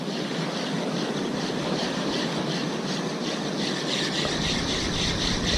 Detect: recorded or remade recorded